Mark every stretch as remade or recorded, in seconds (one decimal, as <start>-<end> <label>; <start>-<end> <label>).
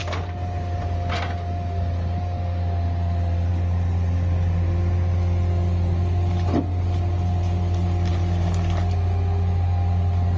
0.0-10.4 recorded